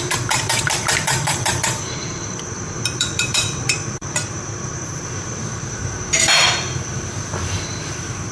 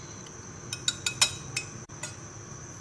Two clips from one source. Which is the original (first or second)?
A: second